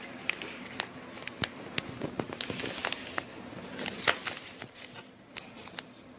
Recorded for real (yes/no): yes